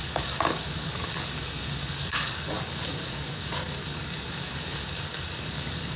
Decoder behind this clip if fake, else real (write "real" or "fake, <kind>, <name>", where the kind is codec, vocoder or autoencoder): fake, codec, DAC